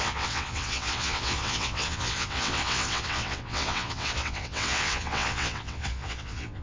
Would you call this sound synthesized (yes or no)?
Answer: yes